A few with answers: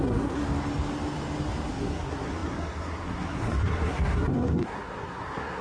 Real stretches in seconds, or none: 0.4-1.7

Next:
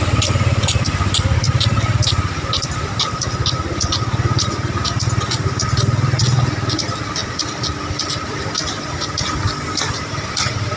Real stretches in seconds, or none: 0.0-10.8

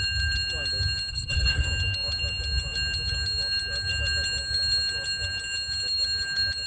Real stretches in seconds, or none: 0.0-1.1; 1.6-6.7

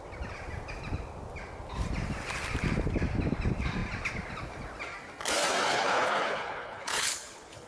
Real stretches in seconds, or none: 0.0-5.7

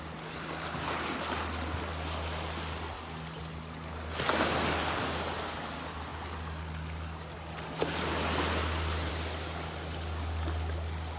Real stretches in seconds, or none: 0.0-11.2

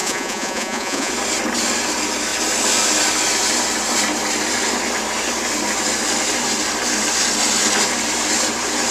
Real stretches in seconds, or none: 1.1-8.9

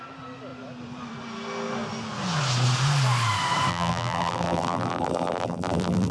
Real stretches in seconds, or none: 0.0-3.7

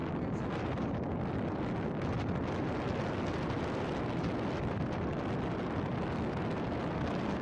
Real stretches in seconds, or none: 0.0-7.4